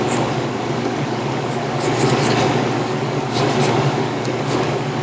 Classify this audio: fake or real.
fake